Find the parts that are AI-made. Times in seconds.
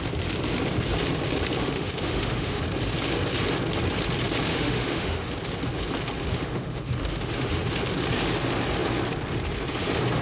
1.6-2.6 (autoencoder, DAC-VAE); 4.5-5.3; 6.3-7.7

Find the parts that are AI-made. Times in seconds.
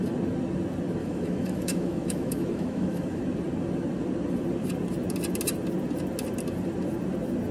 1.0-3.2 (autoencoder, DAC-VAE)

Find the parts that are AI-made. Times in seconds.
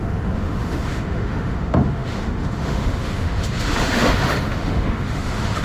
0.0-5.6 (autoencoder, DAC-VAE)